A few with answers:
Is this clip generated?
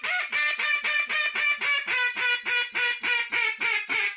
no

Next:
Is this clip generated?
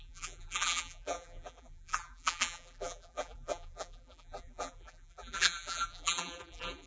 yes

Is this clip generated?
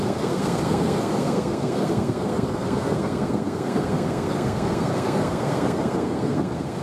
yes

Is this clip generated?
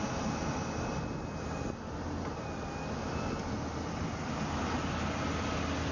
no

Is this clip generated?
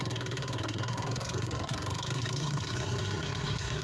yes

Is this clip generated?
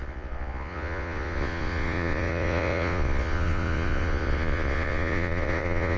yes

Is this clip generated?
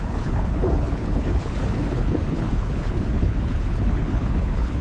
yes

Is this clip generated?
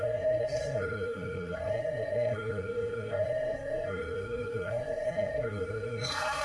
yes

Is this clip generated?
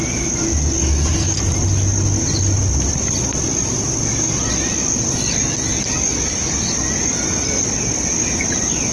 no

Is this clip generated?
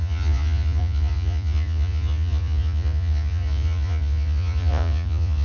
yes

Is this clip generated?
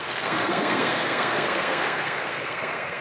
yes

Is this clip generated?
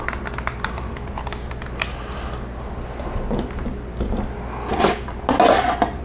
no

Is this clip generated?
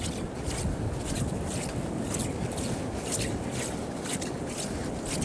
no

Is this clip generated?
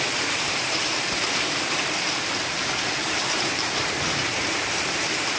yes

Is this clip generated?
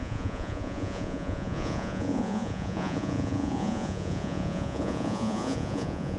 yes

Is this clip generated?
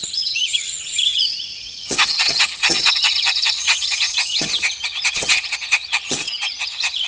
yes